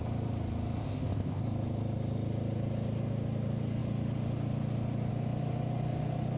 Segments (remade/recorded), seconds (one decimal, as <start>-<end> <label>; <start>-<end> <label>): 0.0-0.8 recorded; 0.8-1.4 remade; 1.4-6.4 recorded